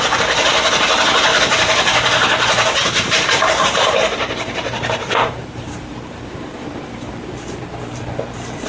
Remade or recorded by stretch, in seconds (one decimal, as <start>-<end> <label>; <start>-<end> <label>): 0.0-2.8 recorded; 2.8-7.1 remade; 7.1-8.7 recorded